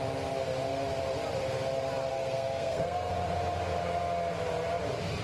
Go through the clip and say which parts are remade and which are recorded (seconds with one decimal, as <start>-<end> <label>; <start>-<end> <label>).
0.0-2.1 recorded; 2.1-3.1 remade; 3.1-5.2 recorded